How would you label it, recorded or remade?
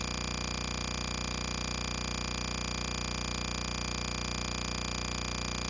recorded